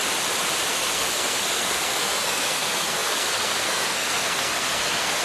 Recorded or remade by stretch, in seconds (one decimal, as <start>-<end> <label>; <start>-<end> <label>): 0.0-0.7 recorded; 0.7-5.2 remade